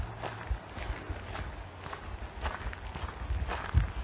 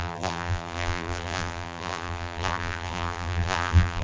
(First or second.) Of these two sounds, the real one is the first